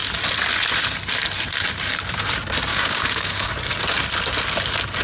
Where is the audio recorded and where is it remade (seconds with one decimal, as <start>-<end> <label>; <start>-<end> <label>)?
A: 0.0-2.7 recorded; 2.7-3.5 remade; 3.5-5.0 recorded